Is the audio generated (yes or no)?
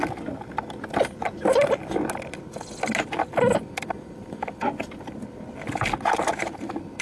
no